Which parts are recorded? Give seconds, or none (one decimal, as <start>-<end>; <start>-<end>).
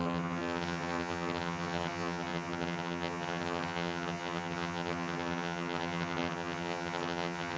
none